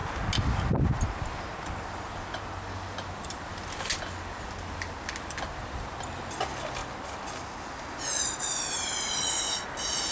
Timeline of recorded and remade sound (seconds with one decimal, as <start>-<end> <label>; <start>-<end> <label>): 0.0-10.1 recorded